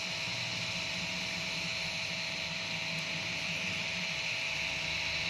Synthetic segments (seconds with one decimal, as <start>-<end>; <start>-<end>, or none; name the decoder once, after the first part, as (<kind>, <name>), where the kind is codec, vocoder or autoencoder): none